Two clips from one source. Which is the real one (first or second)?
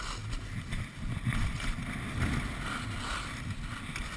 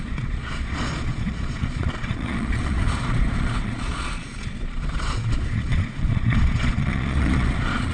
first